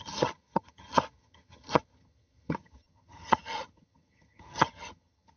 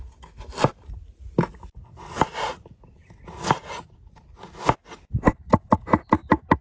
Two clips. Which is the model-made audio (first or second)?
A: first